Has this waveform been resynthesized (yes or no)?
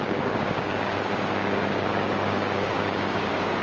yes